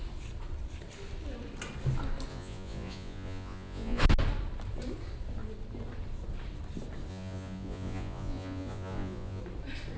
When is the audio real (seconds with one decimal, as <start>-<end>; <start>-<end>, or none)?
0.0-2.3; 4.0-7.1; 9.4-10.0